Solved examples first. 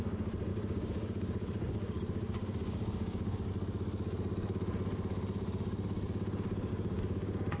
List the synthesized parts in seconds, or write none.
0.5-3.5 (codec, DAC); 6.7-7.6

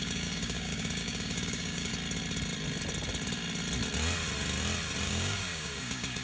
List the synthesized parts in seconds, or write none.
0.0-1.9 (codec, DAC); 5.0-6.2

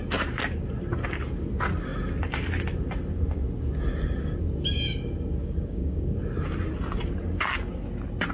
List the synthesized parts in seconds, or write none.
5.4-6.2 (codec, DAC)

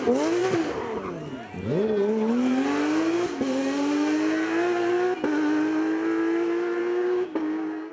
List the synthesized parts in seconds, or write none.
6.8-7.9 (codec, DAC)

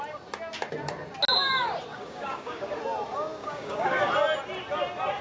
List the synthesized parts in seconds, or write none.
1.9-2.8 (codec, DAC); 3.4-4.1

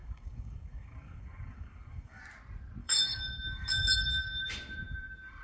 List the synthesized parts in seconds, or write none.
0.0-2.2 (codec, DAC); 2.8-4.5

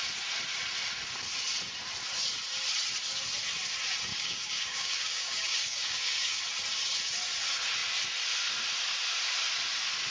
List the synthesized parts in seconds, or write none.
4.1-6.4 (codec, DAC)

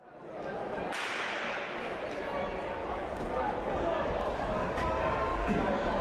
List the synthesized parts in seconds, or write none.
2.8-6.0 (codec, DAC)